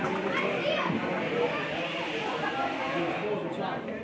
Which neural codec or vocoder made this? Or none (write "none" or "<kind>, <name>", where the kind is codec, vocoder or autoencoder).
none